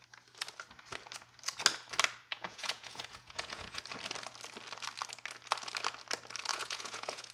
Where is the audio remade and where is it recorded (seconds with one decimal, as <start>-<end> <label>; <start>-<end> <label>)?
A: 0.0-2.3 recorded; 2.3-3.8 remade; 3.8-6.5 recorded; 6.5-7.3 remade